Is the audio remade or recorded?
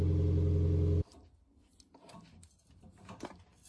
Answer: recorded